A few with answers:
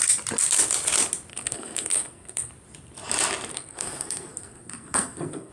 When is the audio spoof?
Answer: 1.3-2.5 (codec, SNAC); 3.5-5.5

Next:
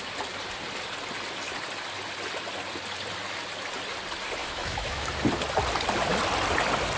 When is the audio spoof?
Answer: 4.4-5.1 (autoencoder, DAC-VAE)

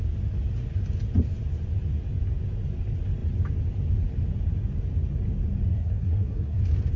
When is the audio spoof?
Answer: 5.7-6.6 (codec, SNAC)